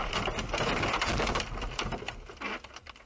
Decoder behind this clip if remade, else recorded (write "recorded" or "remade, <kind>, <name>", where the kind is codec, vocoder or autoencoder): recorded